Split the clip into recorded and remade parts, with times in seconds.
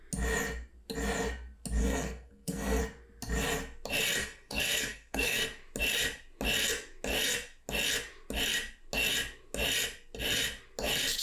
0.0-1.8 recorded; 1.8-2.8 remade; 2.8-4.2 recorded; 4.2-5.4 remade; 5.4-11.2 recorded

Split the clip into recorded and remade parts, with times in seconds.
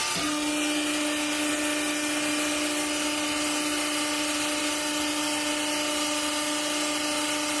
0.0-7.6 recorded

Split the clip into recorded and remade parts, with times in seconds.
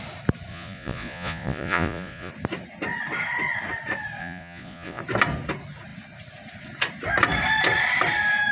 0.0-0.5 recorded; 0.5-2.3 remade; 2.3-4.2 recorded; 4.2-5.0 remade; 5.0-8.5 recorded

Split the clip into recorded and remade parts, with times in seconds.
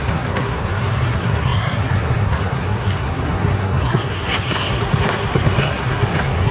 0.0-6.5 remade